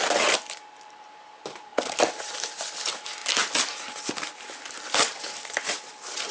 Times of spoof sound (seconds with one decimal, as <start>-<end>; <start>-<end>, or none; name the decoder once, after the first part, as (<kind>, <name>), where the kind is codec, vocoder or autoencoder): 0.0-3.2 (vocoder, BigVGAN v2)